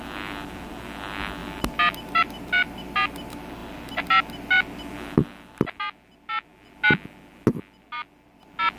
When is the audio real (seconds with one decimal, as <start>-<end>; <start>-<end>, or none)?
0.0-3.6; 4.2-8.8